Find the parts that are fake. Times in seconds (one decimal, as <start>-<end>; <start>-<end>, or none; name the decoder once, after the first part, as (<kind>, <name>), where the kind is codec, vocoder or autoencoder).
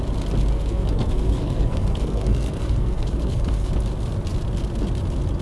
0.5-3.7 (codec, SNAC)